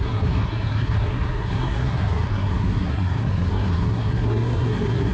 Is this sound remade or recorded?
remade